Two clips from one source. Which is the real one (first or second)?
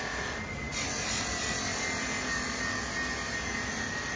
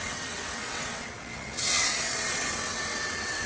first